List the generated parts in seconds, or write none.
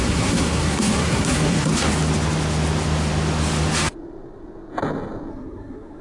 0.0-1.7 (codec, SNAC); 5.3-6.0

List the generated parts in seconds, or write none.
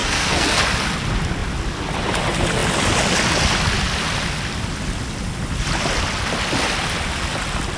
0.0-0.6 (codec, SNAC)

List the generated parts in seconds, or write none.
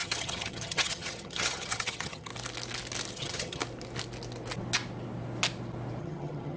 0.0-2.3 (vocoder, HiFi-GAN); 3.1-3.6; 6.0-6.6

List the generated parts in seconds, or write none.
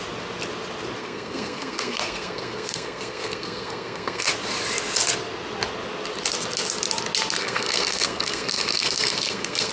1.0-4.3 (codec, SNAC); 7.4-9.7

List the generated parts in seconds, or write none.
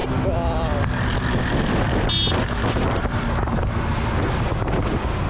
none